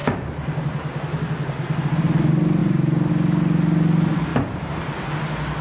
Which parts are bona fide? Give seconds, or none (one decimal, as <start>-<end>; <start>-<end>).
1.0-2.6; 3.1-4.3; 5.1-5.6